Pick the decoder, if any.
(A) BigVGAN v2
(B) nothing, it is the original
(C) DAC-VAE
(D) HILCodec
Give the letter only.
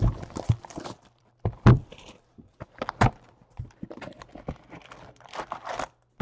A